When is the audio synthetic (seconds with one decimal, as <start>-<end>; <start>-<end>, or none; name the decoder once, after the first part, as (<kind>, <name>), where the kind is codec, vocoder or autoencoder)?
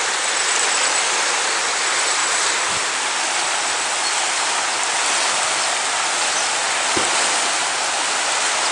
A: 2.2-2.9 (vocoder, BigVGAN v2); 4.0-4.6